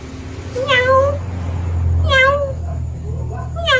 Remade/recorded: recorded